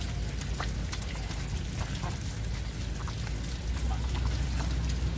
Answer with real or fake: real